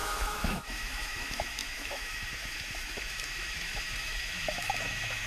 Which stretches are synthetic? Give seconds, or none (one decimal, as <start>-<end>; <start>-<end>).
0.0-5.3